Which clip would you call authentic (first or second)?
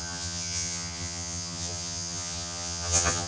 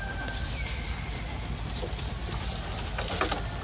second